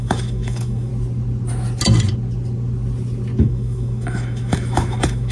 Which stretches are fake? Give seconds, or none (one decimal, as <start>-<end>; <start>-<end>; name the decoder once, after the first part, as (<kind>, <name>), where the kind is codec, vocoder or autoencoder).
0.0-0.9 (autoencoder, DAC-VAE); 3.4-5.3

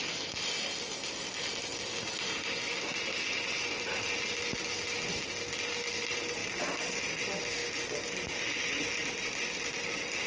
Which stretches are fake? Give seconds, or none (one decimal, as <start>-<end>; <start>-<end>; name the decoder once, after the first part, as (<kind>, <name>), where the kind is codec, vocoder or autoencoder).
none

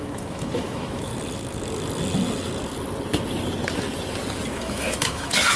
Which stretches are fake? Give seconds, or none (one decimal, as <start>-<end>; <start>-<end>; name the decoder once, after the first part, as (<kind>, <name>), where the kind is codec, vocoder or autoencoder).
0.0-1.1 (autoencoder, DAC-VAE); 4.5-5.6

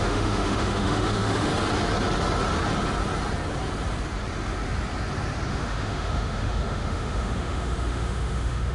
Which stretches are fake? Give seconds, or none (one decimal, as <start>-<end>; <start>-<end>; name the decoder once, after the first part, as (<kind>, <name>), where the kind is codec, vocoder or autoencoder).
0.0-1.5 (autoencoder, DAC-VAE); 5.5-8.7

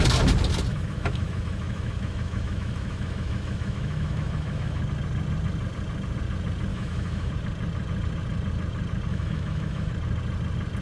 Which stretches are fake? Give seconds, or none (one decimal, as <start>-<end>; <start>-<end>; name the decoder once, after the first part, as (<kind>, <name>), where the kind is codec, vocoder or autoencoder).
0.7-4.8 (autoencoder, DAC-VAE); 6.7-7.3; 9.1-9.9

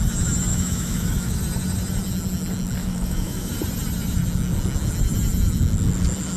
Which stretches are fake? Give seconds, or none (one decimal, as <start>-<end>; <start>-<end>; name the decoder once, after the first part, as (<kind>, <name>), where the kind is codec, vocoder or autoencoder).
0.5-1.4 (autoencoder, DAC-VAE); 2.8-3.5

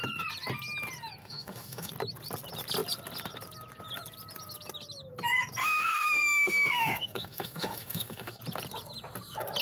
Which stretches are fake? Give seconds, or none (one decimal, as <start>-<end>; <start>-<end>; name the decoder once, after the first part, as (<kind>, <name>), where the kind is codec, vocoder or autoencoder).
1.2-1.9 (autoencoder, DAC-VAE); 5.6-8.4

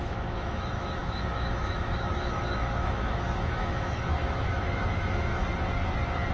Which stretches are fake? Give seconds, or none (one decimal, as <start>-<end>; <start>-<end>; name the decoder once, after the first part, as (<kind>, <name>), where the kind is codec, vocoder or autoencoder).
0.0-5.3 (autoencoder, DAC-VAE)